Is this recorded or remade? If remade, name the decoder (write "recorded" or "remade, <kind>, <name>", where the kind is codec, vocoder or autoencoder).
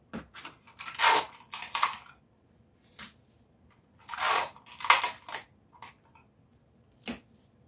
recorded